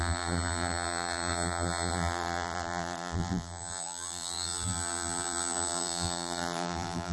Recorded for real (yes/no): no